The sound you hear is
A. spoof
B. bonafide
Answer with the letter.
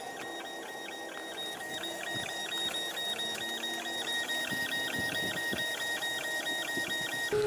B